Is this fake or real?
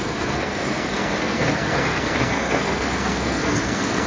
fake